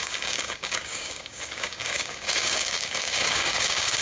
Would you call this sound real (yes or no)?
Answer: no